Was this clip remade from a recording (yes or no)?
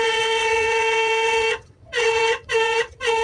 yes